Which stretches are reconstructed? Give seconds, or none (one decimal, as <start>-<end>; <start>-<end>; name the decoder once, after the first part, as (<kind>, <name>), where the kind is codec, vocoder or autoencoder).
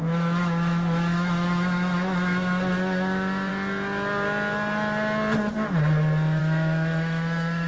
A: 0.0-3.5 (autoencoder, DAC-VAE); 6.4-7.7